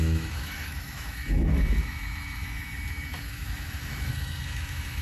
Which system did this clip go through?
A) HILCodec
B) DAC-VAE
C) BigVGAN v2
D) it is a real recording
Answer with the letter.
B